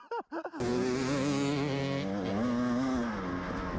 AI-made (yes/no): no